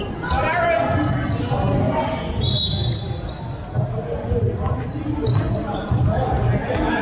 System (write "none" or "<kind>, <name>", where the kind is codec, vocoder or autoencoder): none